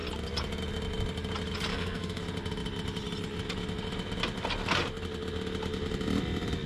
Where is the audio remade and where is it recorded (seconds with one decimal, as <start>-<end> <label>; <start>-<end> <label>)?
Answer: 0.0-1.7 recorded; 1.7-2.2 remade; 2.2-6.7 recorded